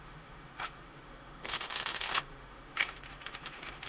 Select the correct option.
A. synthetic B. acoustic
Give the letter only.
A